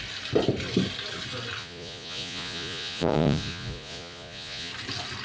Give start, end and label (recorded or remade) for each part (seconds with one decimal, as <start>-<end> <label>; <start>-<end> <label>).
0.0-1.6 recorded; 1.6-4.7 remade; 4.7-5.2 recorded